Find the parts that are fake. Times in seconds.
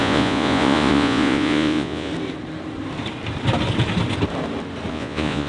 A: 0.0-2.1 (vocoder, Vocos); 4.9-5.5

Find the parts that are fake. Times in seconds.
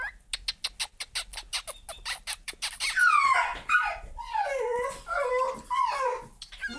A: 1.9-2.5 (vocoder, BigVGAN v2)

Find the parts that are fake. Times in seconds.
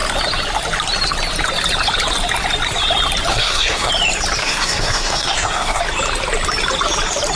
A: 3.3-3.9 (codec, SNAC); 4.4-5.8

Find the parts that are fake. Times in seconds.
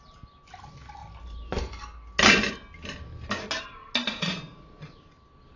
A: none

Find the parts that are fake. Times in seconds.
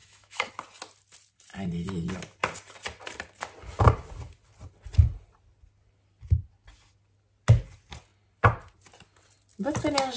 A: 0.0-0.5 (autoencoder, DAC-VAE)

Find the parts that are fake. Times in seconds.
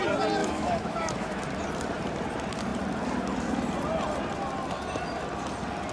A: 0.4-1.4 (autoencoder, DAC-VAE)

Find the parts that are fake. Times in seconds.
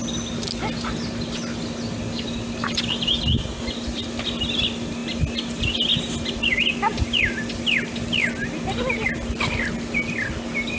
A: none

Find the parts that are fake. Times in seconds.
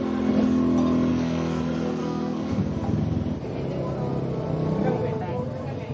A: 1.1-1.6 (codec, SNAC); 2.0-2.6